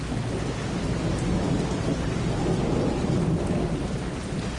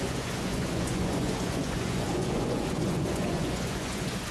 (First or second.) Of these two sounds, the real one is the first